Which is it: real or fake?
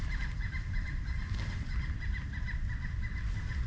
real